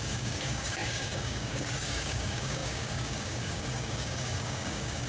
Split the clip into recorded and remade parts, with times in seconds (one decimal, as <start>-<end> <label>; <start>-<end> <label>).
0.0-5.1 remade